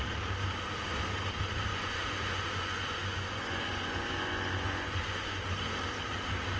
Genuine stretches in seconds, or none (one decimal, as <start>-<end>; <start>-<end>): 0.0-1.7; 5.4-6.6